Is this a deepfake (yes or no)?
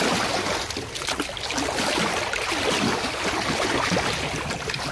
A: no